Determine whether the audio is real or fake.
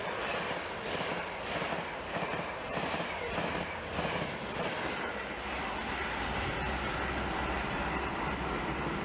real